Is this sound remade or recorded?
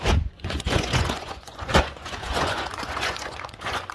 remade